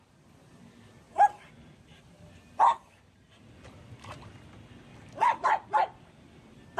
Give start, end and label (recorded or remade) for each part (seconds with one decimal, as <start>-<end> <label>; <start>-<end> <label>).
0.0-6.8 recorded